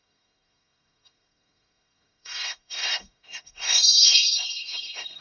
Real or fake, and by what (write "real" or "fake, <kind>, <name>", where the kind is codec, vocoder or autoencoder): fake, codec, SNAC